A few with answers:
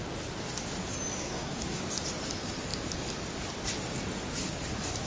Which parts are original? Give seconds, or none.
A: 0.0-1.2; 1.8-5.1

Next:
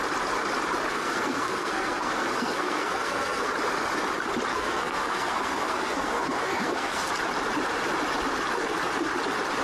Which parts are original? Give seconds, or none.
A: 0.0-0.9; 3.5-4.5; 7.1-9.6

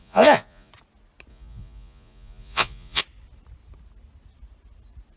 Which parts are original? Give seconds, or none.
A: 0.7-1.3; 3.0-5.2

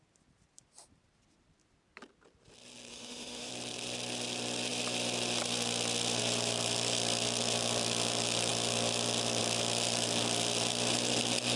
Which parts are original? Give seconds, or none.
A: 0.0-2.9; 3.5-11.6

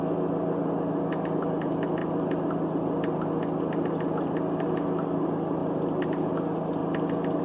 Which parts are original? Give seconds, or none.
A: 0.0-7.4